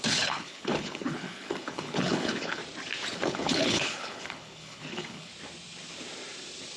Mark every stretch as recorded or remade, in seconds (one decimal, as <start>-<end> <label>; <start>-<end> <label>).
0.0-2.6 remade; 2.6-3.1 recorded; 3.1-5.3 remade; 5.3-6.8 recorded